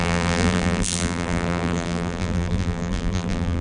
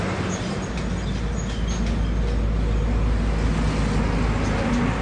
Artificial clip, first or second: first